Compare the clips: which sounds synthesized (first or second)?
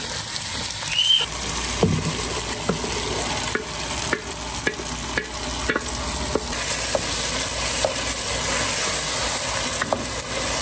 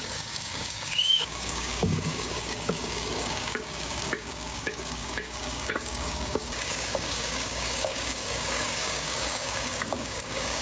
second